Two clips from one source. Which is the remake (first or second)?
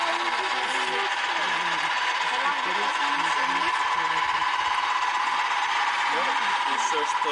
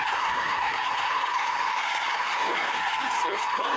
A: second